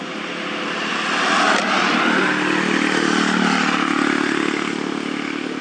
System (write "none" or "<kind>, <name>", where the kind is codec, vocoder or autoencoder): none